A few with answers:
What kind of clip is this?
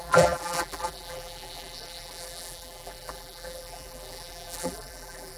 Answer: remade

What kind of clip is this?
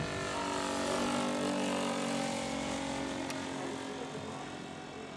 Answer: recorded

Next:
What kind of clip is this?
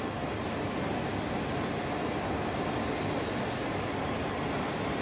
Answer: recorded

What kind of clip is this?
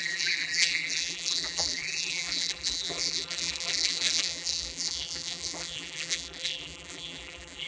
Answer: remade